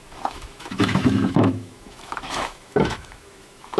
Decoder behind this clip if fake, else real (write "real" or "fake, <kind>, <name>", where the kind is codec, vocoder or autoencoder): fake, autoencoder, DAC-VAE